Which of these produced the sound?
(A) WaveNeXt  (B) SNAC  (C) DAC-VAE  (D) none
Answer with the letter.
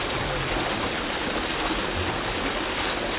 D